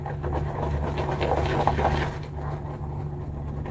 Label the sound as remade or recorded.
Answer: recorded